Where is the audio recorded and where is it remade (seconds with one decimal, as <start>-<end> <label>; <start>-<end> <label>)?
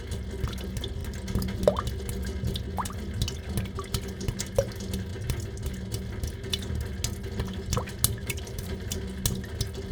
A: 0.0-8.2 recorded; 8.2-9.0 remade; 9.0-9.9 recorded